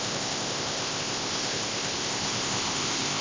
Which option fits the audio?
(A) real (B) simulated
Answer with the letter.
B